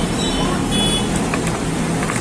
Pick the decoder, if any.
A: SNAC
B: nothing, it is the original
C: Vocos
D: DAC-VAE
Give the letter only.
B